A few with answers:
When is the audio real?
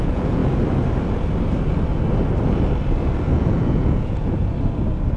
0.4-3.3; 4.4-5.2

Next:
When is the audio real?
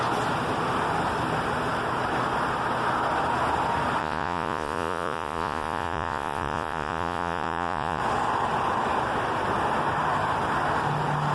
0.0-4.0; 8.0-11.3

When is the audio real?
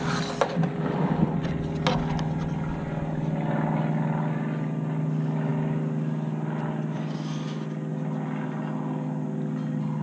0.0-10.0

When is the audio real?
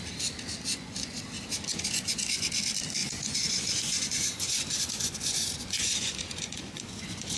0.0-0.7; 1.2-1.7; 2.5-3.0